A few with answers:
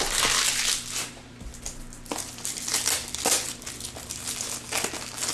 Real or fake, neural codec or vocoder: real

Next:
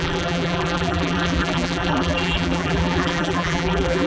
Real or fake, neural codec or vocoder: fake, vocoder, BigVGAN v2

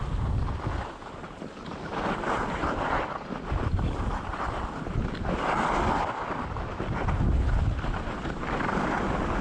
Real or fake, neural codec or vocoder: real